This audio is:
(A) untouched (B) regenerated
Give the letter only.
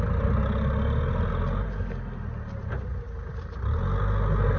A